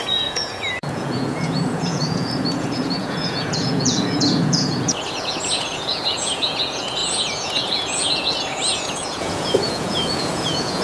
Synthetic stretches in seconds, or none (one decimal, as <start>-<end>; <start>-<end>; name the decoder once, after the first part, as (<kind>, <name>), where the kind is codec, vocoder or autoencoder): 0.0-10.8 (vocoder, Vocos)